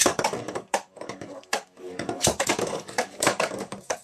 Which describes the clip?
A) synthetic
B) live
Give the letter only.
A